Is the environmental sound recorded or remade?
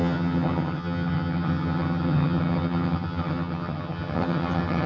remade